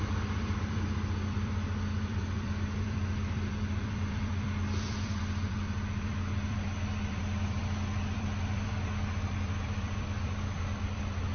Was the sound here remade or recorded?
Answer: remade